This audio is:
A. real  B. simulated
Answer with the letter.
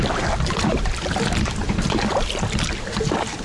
A